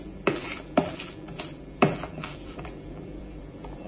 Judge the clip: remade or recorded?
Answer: remade